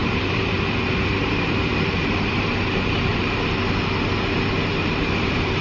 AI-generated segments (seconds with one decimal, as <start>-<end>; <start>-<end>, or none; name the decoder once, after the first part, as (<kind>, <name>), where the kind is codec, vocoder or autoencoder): 0.0-3.1 (vocoder, BigVGAN v2); 4.5-5.6